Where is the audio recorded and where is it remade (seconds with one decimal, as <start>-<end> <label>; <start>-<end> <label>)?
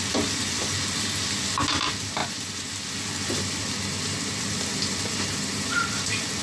0.0-6.4 recorded